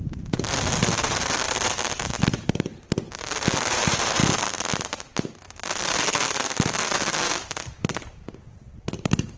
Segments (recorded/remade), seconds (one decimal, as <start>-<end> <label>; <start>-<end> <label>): 0.0-2.7 remade; 2.7-3.7 recorded; 3.7-4.2 remade; 4.2-8.8 recorded; 8.8-9.4 remade